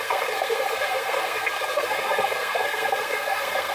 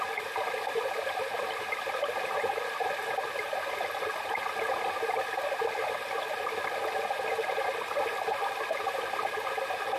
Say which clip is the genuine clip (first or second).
second